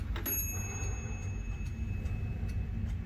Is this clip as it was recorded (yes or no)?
yes